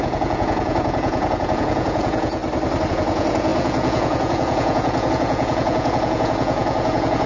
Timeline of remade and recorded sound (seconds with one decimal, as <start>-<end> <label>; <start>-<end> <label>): 0.0-2.4 remade; 2.4-2.9 recorded; 2.9-7.3 remade